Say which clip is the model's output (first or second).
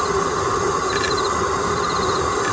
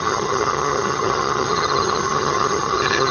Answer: second